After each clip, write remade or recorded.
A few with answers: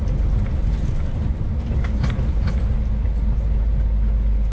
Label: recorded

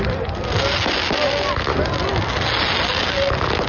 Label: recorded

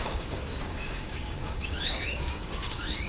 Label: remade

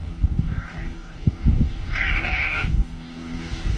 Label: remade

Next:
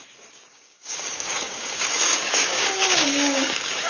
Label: remade